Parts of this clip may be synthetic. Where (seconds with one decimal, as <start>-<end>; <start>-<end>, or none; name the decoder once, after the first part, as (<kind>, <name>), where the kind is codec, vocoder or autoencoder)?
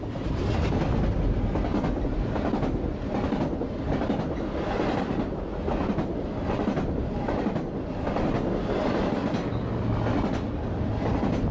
none